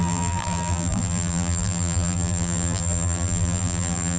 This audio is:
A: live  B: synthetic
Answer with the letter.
B